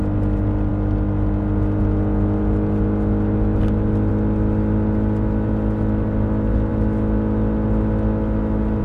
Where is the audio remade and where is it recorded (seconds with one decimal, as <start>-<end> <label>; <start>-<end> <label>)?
0.0-8.8 recorded